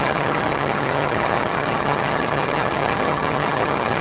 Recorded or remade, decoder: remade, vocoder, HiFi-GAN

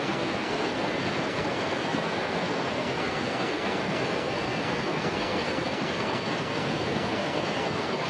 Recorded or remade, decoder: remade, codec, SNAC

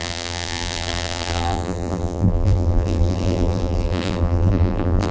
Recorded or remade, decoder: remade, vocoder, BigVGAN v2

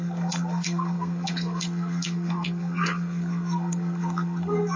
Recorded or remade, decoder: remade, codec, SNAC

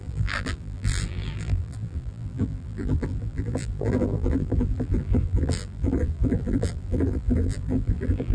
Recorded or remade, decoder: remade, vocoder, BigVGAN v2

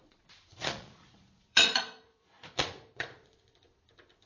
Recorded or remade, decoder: remade, vocoder, Vocos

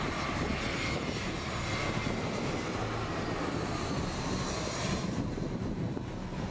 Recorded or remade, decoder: recorded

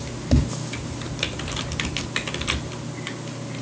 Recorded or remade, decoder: recorded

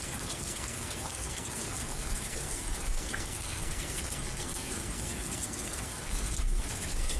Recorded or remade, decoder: remade, codec, SNAC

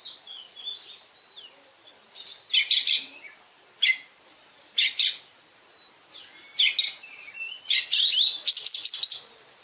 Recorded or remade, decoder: recorded